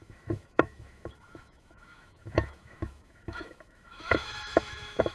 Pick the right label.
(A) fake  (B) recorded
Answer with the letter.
A